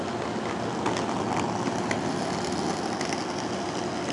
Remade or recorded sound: recorded